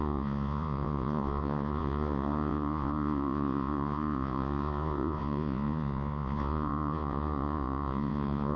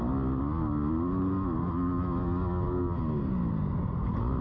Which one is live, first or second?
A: second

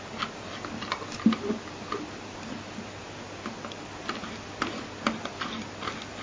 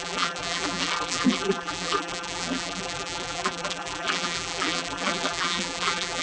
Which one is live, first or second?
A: first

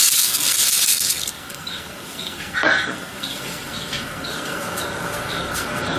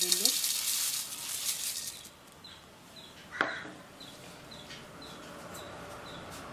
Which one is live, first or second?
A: second